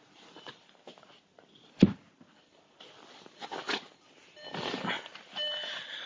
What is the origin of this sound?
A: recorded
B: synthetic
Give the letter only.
A